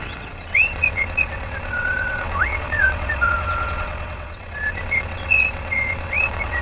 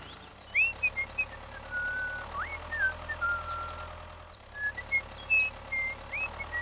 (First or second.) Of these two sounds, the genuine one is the second